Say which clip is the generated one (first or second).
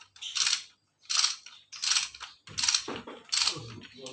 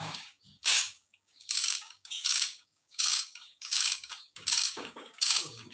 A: second